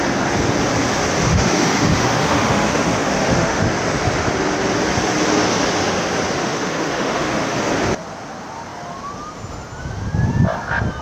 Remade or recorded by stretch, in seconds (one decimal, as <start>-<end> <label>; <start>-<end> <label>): 0.0-1.3 recorded; 1.3-3.6 remade; 3.6-6.4 recorded; 6.4-7.7 remade; 7.7-11.0 recorded

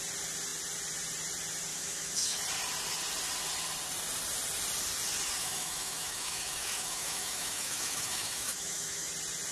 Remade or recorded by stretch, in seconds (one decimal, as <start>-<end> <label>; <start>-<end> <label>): 0.0-1.7 recorded; 1.7-2.4 remade; 2.4-5.4 recorded; 5.4-9.1 remade; 9.1-9.5 recorded

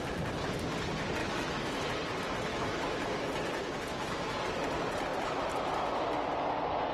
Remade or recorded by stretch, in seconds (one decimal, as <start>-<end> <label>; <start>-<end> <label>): 0.0-1.2 recorded; 1.2-1.8 remade; 1.8-2.5 recorded; 2.5-3.3 remade; 3.3-3.9 recorded; 3.9-4.4 remade; 4.4-6.9 recorded